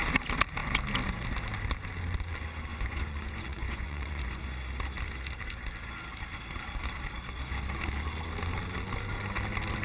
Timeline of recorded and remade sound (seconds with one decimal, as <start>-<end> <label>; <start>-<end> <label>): 0.0-2.7 recorded; 2.7-4.4 remade; 4.4-9.8 recorded